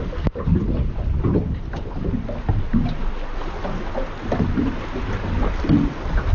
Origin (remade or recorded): recorded